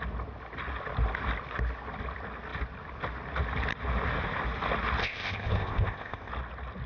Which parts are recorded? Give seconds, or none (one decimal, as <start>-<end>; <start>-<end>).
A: 0.0-5.0; 6.3-6.9